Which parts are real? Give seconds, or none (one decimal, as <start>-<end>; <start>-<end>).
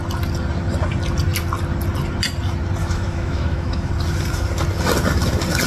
0.0-2.8; 3.9-5.7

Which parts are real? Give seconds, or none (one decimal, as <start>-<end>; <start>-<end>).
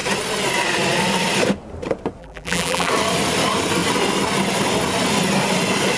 0.0-2.2; 2.9-6.0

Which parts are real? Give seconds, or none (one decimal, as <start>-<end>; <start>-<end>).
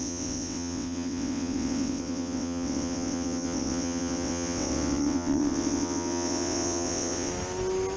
7.3-8.0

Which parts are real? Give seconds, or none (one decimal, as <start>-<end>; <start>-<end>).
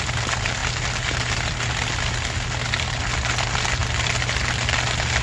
0.0-5.2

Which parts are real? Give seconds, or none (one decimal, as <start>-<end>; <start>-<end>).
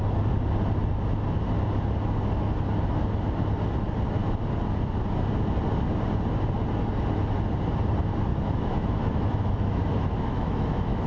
0.0-8.3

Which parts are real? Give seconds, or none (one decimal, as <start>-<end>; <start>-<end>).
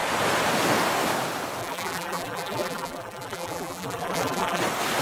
0.0-1.6; 4.6-5.0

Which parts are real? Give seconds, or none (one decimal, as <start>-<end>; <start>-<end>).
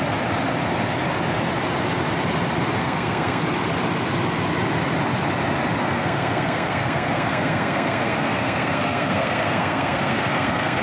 0.0-2.8; 3.4-5.8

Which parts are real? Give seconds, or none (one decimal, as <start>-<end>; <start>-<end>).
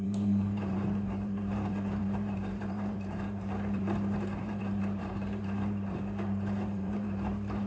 none